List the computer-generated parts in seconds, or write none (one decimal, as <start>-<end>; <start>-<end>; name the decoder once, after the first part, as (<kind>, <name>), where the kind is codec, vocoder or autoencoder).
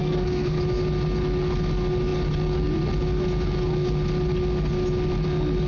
0.0-0.6 (codec, SNAC)